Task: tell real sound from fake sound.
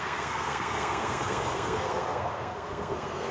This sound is fake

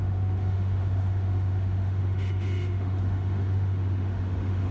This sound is fake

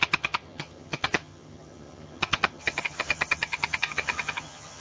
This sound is fake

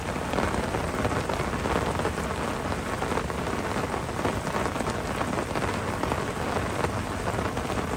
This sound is real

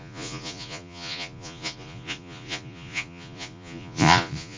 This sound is fake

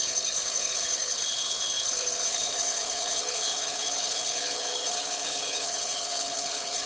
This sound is fake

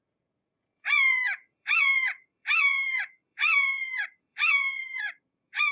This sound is fake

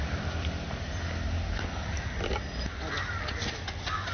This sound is real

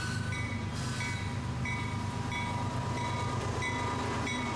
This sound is real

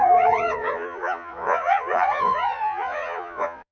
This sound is fake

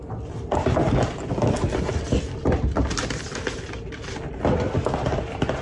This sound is real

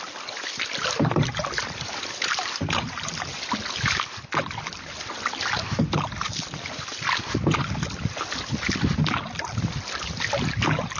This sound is real